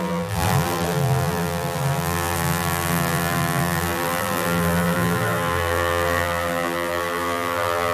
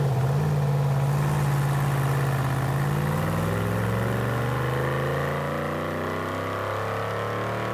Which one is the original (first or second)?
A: second